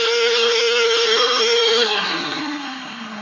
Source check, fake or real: fake